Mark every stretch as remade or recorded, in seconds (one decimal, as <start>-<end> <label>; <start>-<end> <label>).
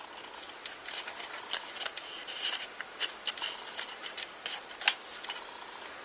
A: 0.0-6.0 recorded